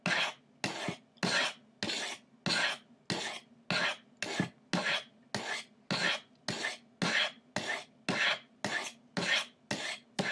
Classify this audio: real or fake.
real